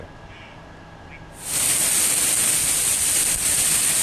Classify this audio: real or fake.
real